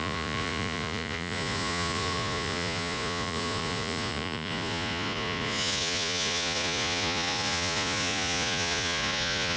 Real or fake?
fake